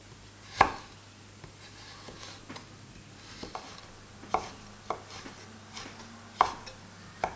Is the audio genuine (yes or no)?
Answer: yes